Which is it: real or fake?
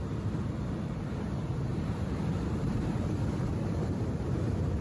fake